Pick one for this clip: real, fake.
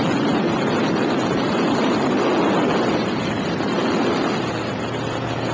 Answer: real